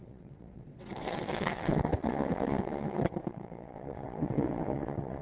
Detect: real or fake fake